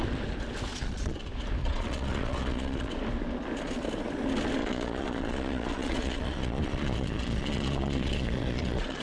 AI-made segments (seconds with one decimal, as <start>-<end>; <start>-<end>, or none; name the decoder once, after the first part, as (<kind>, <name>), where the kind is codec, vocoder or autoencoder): 0.7-1.2 (vocoder, Vocos); 1.6-2.9; 4.6-9.0